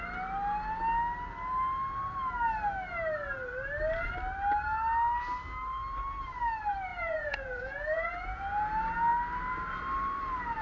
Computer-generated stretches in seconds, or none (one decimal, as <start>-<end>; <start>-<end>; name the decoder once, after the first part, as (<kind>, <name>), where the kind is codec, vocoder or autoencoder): 6.9-8.6 (vocoder, Vocos)